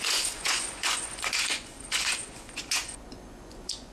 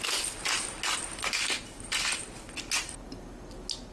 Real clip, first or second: second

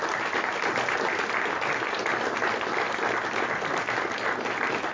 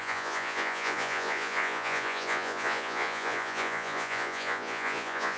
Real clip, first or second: first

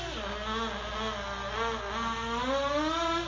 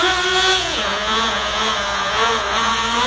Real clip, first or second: first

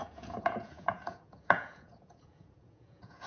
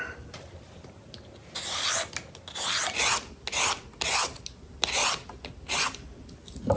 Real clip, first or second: second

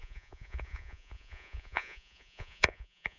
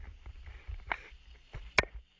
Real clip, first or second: second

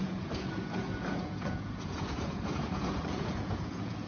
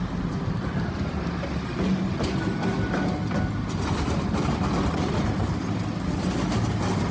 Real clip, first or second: second